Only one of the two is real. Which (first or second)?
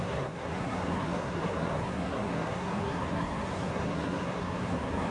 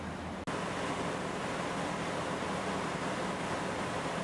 second